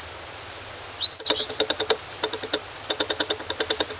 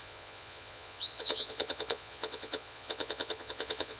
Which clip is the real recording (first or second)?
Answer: first